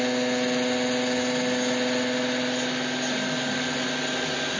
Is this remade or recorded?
recorded